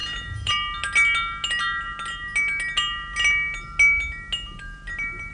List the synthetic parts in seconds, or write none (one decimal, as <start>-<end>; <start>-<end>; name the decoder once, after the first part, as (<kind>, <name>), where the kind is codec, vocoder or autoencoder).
0.0-0.5 (vocoder, BigVGAN v2)

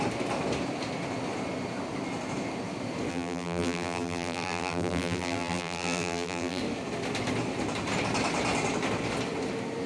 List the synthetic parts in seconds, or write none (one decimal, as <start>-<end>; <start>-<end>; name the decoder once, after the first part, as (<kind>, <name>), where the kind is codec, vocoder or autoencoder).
3.1-6.6 (vocoder, BigVGAN v2)

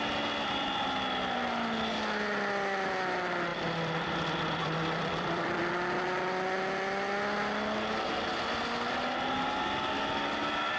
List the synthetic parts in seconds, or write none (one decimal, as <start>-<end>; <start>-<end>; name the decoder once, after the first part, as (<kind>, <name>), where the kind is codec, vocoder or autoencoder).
3.5-5.7 (vocoder, BigVGAN v2)